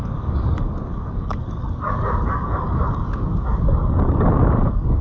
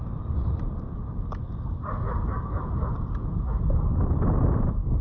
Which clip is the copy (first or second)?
first